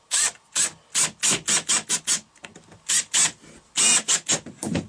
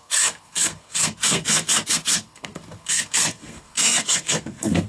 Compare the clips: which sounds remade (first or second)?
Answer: second